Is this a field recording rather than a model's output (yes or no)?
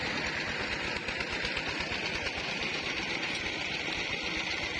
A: yes